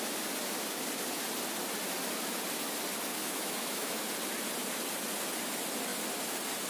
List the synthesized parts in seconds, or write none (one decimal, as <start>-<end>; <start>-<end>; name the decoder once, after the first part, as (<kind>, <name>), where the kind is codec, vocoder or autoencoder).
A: 3.1-4.1 (autoencoder, DAC-VAE)

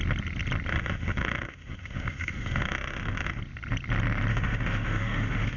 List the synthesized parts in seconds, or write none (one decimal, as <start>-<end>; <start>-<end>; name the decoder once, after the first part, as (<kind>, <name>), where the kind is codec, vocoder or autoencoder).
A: 0.7-3.4 (autoencoder, DAC-VAE); 4.3-5.6

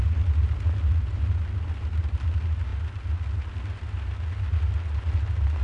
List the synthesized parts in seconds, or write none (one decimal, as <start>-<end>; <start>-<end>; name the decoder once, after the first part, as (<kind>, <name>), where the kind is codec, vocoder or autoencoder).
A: none

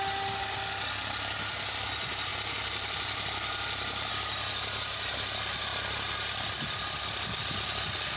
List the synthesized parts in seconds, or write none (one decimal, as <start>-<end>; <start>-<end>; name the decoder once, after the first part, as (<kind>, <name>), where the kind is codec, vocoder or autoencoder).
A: none

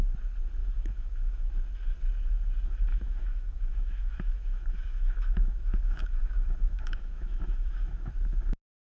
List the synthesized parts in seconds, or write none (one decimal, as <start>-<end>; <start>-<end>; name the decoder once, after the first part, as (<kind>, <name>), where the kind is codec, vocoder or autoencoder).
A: 0.6-1.5 (autoencoder, DAC-VAE); 2.9-8.1

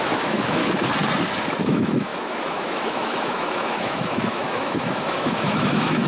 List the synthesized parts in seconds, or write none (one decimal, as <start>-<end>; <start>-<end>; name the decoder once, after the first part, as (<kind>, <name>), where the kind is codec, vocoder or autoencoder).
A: 0.0-0.6 (autoencoder, DAC-VAE); 1.6-6.1